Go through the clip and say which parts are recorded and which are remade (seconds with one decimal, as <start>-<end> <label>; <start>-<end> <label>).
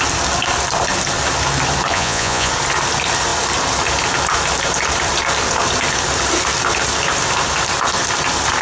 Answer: 0.0-1.9 recorded; 1.9-2.5 remade; 2.5-8.6 recorded